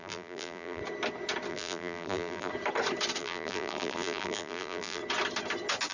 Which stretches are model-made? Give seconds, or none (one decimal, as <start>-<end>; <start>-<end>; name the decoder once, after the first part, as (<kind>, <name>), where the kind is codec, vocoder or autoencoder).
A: 0.0-0.8 (vocoder, BigVGAN v2); 1.5-2.5; 3.2-5.0